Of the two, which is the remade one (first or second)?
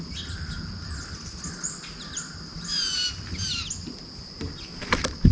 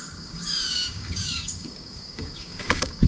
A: second